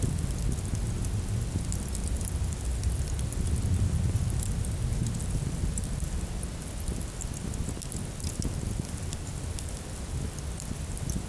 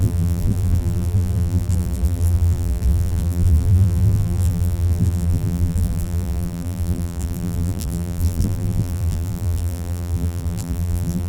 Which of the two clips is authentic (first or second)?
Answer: first